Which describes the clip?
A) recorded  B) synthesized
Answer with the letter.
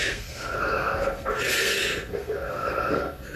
B